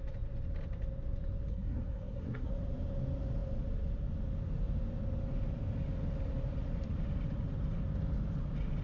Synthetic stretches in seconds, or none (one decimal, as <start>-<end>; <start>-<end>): 1.5-2.5